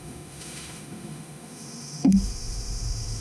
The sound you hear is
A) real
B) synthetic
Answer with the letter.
B